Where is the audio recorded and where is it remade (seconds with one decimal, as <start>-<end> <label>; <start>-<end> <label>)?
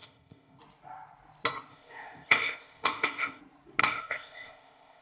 0.0-0.6 remade; 0.6-1.7 recorded; 1.7-3.4 remade; 3.4-3.8 recorded; 3.8-5.0 remade